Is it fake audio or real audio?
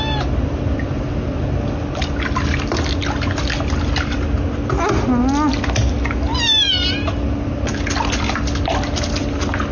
real